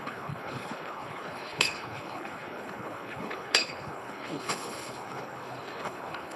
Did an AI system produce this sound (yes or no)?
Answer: yes